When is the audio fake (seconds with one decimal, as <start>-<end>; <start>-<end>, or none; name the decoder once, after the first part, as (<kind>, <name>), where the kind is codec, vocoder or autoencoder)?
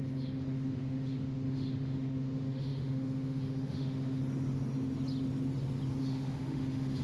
0.0-4.2 (autoencoder, DAC-VAE); 6.0-7.0